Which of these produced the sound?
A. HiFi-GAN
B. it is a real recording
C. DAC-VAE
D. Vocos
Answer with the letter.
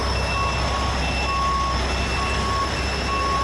B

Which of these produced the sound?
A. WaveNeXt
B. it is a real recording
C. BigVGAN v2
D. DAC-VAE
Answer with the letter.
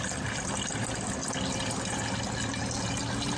B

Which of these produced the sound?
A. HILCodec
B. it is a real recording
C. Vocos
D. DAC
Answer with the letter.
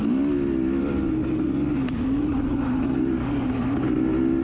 B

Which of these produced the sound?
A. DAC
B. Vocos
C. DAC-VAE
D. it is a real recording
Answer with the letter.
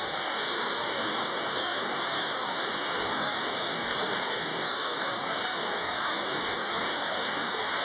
A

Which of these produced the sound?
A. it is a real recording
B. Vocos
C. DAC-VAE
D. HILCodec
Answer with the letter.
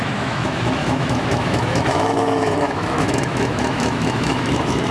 C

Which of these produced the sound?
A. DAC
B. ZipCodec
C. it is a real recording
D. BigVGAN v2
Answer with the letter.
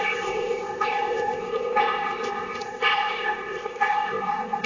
B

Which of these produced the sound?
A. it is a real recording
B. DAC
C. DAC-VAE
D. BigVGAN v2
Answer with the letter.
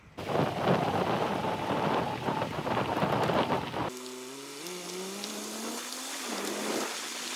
A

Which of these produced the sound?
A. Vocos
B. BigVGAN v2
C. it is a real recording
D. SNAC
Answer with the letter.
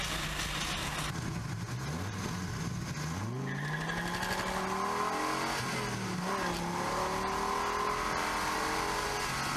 C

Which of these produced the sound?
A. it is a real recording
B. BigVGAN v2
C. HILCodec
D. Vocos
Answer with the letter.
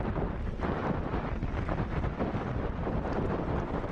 B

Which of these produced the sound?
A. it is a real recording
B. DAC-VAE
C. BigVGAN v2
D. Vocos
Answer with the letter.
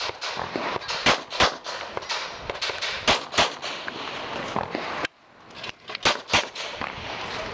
A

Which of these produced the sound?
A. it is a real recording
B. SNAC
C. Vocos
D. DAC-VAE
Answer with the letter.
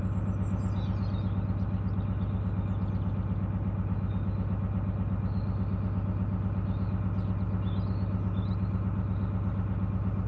A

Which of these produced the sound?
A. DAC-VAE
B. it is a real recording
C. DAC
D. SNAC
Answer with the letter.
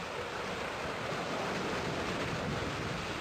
B